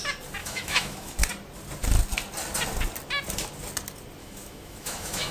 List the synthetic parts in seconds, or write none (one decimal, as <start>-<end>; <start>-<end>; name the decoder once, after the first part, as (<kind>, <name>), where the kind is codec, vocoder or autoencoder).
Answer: 0.4-1.2 (autoencoder, DAC-VAE); 4.2-5.3